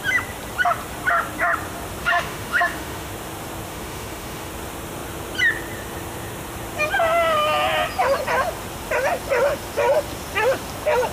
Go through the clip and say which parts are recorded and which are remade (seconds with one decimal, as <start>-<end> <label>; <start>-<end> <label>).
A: 0.0-2.0 recorded; 2.0-3.1 remade; 3.1-3.7 recorded; 3.7-4.5 remade; 4.5-11.1 recorded